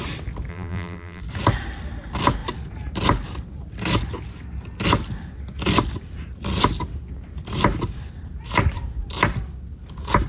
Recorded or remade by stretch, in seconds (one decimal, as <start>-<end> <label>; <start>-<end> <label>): 0.0-0.5 recorded; 0.5-1.2 remade; 1.2-10.3 recorded